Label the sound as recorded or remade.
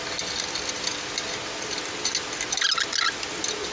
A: recorded